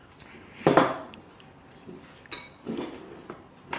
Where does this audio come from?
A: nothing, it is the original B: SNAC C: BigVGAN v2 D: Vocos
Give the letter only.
A